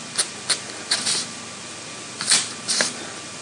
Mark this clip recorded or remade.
recorded